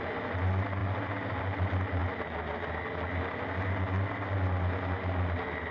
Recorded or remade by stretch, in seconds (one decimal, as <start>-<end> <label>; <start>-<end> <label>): 0.0-5.7 recorded